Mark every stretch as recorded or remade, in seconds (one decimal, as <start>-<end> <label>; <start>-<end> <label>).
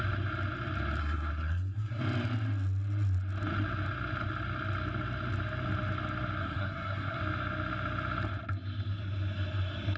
0.0-1.0 recorded; 1.0-2.0 remade; 2.0-6.4 recorded; 6.4-7.2 remade; 7.2-10.0 recorded